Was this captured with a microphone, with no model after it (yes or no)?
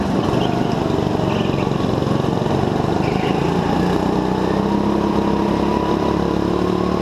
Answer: yes